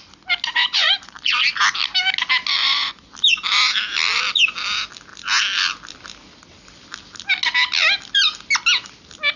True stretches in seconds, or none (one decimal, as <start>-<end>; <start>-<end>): 0.0-0.5; 1.6-2.6; 3.1-9.4